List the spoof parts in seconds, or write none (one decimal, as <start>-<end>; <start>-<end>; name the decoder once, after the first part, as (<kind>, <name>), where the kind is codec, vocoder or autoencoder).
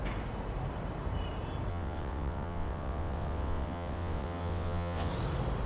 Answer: 1.7-5.1 (vocoder, WaveNeXt)